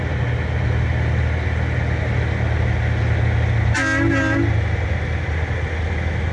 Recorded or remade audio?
recorded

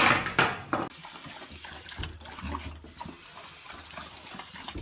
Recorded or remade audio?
recorded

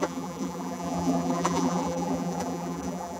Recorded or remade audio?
remade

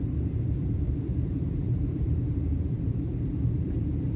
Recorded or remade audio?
remade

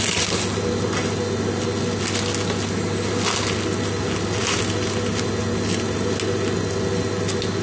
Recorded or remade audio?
recorded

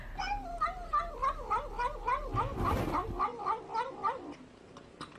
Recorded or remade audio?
recorded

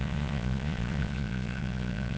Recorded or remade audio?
remade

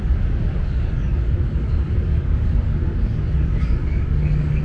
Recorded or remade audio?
remade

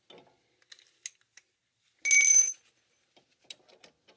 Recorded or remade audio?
recorded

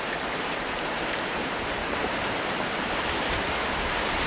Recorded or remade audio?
remade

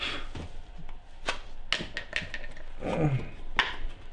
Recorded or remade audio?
recorded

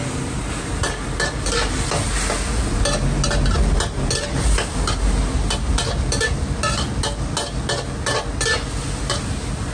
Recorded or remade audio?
recorded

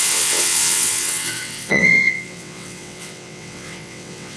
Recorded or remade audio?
remade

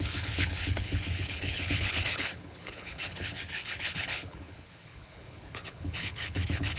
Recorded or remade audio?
remade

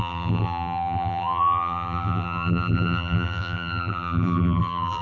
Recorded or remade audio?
remade